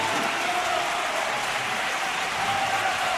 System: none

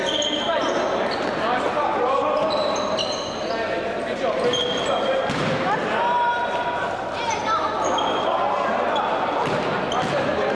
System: none